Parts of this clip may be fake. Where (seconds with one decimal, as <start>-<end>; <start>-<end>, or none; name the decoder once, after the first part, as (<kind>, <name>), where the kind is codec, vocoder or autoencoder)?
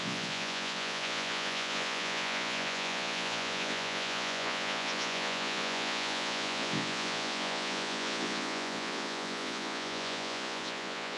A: 0.0-11.2 (vocoder, Vocos)